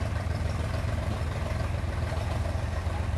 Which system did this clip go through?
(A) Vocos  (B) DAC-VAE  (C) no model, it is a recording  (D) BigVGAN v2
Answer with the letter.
C